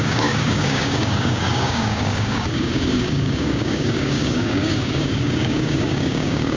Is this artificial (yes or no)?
yes